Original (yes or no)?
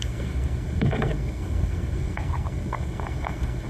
no